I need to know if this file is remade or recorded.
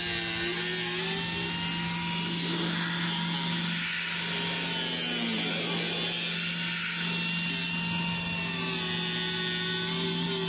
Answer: recorded